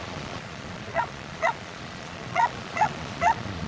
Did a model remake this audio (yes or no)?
yes